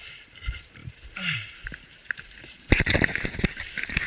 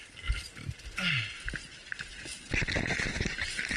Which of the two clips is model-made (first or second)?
first